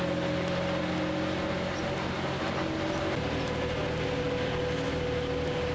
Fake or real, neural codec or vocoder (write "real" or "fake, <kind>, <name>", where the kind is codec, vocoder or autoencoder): real